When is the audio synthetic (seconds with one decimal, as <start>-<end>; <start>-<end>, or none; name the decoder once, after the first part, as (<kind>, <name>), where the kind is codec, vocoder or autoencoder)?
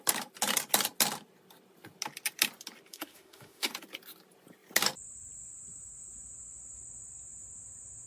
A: 2.9-3.7 (autoencoder, DAC-VAE)